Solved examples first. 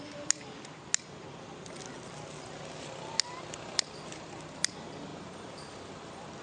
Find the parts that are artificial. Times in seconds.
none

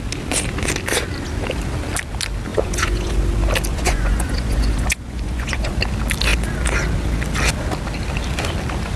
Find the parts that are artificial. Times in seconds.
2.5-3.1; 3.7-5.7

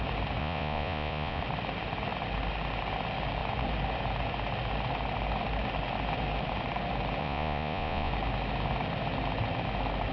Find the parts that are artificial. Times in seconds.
0.4-1.4; 7.2-8.1

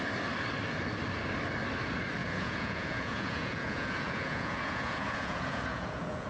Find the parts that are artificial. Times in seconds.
2.2-6.3

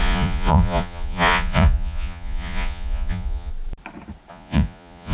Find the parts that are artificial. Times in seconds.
0.0-3.5; 4.3-5.1

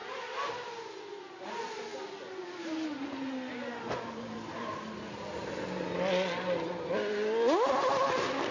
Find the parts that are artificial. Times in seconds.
none

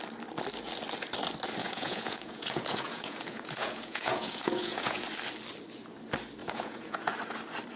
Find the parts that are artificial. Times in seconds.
1.6-5.0; 6.4-7.1